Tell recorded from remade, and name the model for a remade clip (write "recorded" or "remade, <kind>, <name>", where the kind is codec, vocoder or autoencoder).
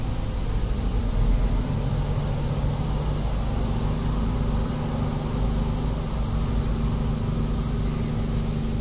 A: recorded